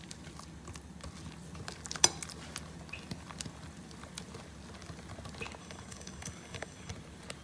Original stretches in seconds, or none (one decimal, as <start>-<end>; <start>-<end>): 0.0-5.6; 6.9-7.4